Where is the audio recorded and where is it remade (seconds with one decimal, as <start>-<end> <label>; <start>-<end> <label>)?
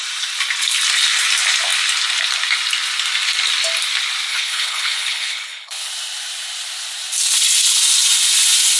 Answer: 0.0-4.3 recorded; 4.3-5.9 remade; 5.9-8.8 recorded